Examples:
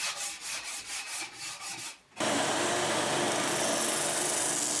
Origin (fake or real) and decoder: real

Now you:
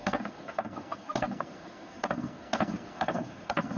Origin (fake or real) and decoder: fake, codec, SNAC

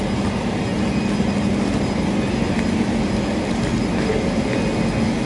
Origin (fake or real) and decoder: real